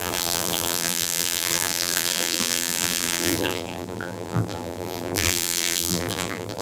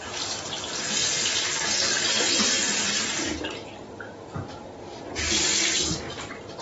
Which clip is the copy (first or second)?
first